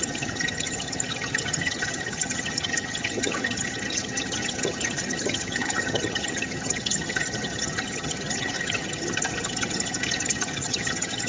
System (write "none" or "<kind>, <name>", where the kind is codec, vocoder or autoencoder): vocoder, HiFi-GAN